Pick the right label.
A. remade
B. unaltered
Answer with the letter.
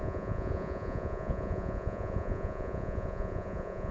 A